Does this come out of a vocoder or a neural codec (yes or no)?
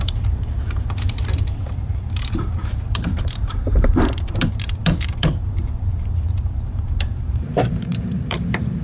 yes